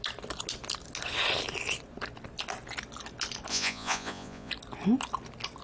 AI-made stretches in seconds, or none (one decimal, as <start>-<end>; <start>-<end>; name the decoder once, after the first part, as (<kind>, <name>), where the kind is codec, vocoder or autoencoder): 3.5-4.5 (vocoder, Vocos)

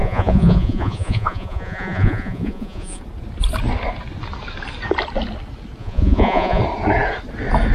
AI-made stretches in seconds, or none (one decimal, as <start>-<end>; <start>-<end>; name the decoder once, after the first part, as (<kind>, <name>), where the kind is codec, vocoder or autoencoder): 0.0-3.0 (vocoder, Vocos); 5.8-6.6

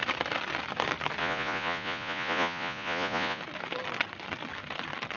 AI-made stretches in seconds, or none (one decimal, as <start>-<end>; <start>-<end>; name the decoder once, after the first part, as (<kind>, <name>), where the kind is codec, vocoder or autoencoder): 1.2-3.4 (vocoder, Vocos)